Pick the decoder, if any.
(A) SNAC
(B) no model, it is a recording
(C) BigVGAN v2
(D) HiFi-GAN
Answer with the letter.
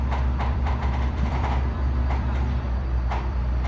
C